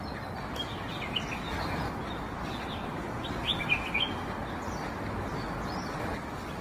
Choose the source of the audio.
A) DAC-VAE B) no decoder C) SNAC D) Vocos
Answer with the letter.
B